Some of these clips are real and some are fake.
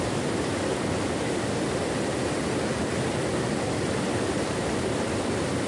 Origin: real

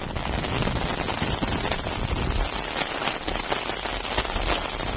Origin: real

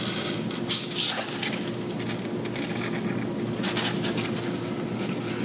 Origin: real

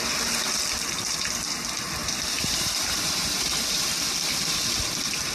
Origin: real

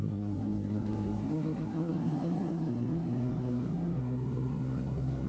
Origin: fake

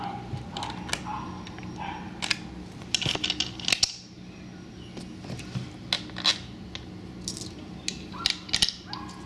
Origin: real